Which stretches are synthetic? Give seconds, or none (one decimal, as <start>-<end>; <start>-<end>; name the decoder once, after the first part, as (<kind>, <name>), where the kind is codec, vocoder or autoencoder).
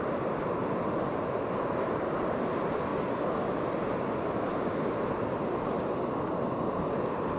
none